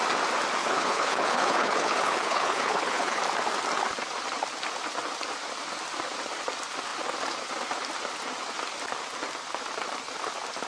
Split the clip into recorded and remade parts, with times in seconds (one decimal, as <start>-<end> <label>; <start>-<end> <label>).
0.0-0.6 recorded; 0.6-3.2 remade; 3.2-10.7 recorded